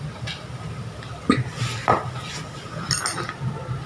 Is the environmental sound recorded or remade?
recorded